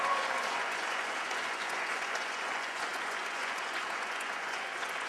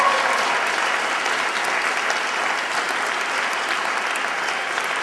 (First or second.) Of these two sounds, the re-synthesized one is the first